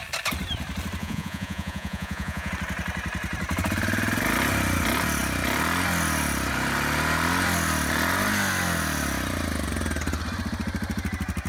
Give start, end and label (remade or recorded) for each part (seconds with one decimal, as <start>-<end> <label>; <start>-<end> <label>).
0.0-1.0 recorded; 1.0-2.5 remade; 2.5-11.5 recorded